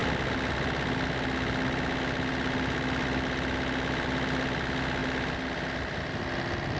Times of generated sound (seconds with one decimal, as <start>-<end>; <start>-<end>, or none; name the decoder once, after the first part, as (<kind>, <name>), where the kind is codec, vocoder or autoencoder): none